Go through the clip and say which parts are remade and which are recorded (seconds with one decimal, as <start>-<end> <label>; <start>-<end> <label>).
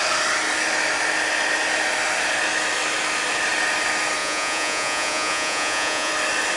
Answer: 0.0-4.2 recorded; 4.2-6.1 remade; 6.1-6.6 recorded